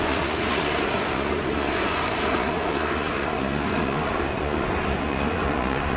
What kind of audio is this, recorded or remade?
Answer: remade